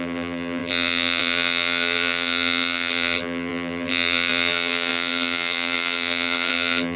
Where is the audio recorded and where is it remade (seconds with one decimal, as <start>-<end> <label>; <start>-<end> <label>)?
0.0-7.0 remade

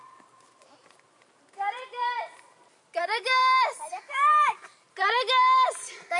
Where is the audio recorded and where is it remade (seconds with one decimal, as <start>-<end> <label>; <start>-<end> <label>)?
0.0-6.2 remade